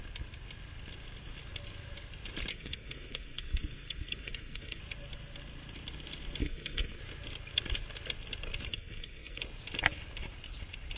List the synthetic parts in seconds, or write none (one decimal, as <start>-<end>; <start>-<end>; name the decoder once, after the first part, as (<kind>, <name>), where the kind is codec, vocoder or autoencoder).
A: 2.5-4.8 (codec, SNAC); 6.4-7.0; 8.7-9.4